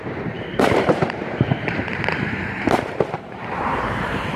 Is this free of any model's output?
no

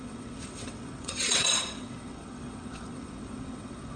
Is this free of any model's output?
no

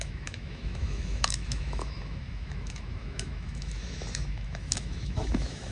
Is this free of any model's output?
no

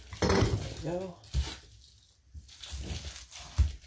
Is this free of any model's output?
yes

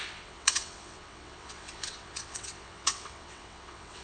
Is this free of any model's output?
no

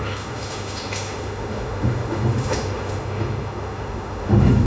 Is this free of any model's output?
no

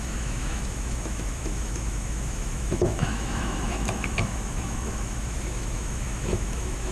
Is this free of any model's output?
no